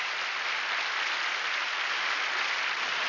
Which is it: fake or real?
real